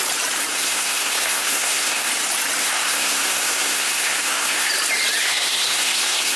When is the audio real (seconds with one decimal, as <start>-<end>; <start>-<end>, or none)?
0.0-0.5; 2.1-2.6; 4.7-5.2